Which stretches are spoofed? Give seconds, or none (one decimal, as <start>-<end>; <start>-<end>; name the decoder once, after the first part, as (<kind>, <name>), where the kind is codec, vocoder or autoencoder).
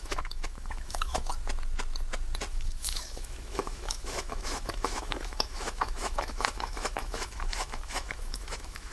0.0-1.3 (autoencoder, DAC-VAE); 2.5-8.9